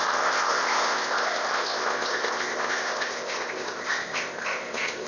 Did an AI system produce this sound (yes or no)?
yes